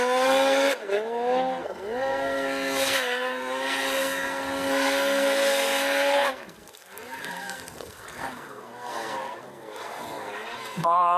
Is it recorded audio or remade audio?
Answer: remade